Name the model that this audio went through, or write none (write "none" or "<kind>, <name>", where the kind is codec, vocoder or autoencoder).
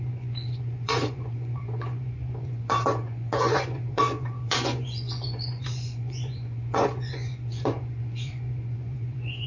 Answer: vocoder, Vocos